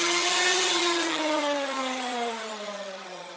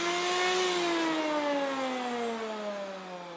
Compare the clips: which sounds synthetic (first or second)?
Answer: first